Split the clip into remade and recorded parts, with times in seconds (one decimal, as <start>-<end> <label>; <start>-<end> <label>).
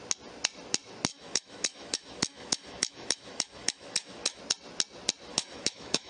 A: 0.0-1.1 recorded; 1.1-4.4 remade; 4.4-5.3 recorded; 5.3-6.1 remade